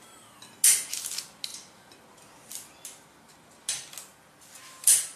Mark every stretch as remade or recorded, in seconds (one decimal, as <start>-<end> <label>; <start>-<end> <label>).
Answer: 0.0-5.2 recorded